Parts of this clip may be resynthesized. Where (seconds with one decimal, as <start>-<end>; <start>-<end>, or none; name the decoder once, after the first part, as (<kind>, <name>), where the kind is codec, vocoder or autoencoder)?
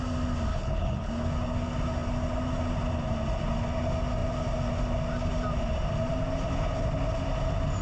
0.5-1.1 (codec, HILCodec)